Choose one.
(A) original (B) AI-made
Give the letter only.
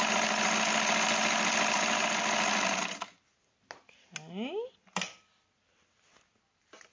A